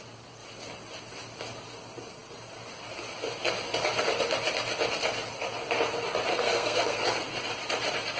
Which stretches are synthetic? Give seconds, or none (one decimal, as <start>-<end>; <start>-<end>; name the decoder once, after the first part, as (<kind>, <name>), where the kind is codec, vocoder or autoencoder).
6.3-7.2 (codec, SNAC)